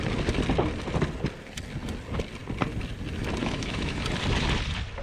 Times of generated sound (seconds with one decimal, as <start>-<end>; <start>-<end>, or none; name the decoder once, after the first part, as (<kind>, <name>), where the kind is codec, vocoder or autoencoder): 3.4-4.0 (autoencoder, DAC-VAE)